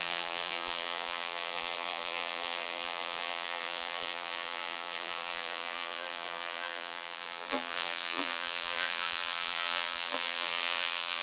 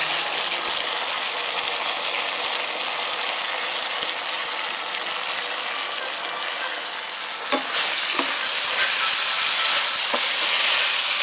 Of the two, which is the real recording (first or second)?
second